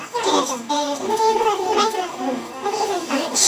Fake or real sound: fake